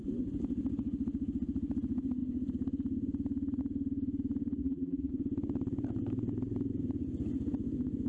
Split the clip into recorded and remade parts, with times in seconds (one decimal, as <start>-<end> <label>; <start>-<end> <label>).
0.0-4.6 recorded; 4.6-5.1 remade; 5.1-8.1 recorded